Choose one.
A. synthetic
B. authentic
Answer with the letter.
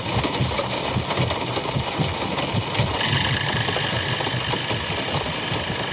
B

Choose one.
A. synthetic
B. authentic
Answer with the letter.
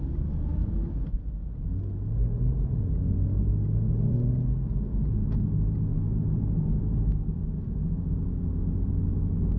B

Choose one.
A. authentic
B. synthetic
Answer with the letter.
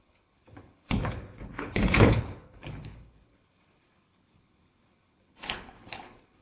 B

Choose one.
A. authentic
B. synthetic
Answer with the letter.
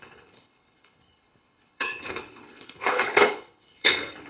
B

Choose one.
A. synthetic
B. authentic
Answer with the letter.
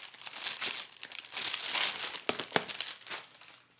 B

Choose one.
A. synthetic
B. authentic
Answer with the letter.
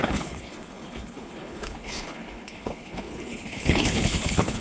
A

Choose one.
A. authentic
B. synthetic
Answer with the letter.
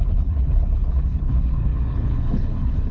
B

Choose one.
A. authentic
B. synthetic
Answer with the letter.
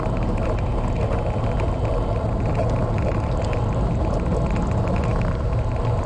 A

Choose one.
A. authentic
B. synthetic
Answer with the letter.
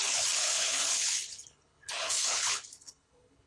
B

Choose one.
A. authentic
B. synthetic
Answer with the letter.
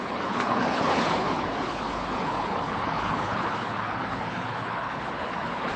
B